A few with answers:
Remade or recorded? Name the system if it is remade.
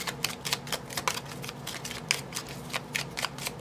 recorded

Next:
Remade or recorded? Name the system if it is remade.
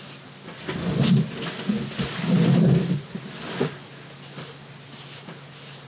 recorded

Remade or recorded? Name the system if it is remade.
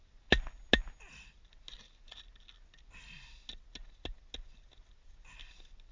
recorded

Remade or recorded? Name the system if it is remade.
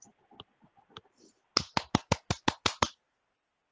recorded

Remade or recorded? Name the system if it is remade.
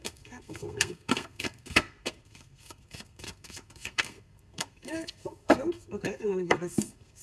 remade, codec, SNAC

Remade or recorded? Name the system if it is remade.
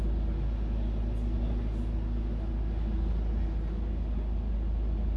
recorded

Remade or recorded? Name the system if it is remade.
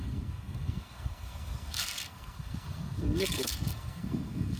remade, codec, SNAC